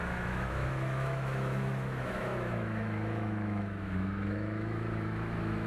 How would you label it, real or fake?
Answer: fake